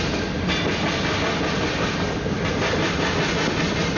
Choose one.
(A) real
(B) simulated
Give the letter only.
A